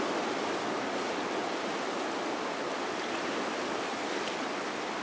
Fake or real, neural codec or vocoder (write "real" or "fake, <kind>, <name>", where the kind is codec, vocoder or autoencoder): real